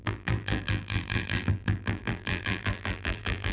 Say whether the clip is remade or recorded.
remade